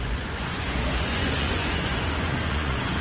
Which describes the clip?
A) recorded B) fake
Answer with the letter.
B